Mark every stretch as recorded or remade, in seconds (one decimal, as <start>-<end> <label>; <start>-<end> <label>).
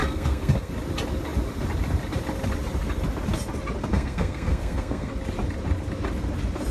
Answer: 0.0-0.7 remade; 0.7-3.9 recorded; 3.9-5.1 remade; 5.1-6.7 recorded